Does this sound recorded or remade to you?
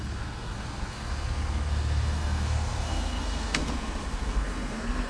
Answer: remade